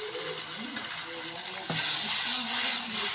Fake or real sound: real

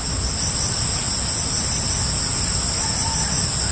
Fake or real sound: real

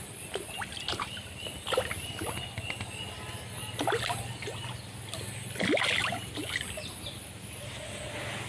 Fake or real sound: real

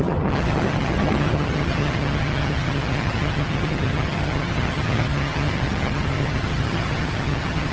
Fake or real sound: fake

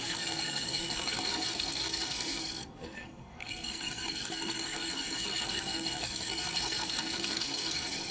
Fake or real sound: fake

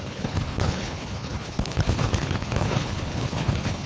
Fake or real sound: fake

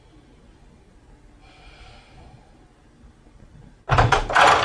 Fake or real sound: real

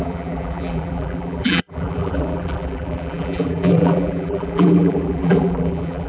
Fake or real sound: fake